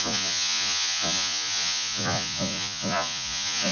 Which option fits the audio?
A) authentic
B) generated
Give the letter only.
B